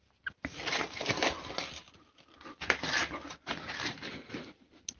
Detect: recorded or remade recorded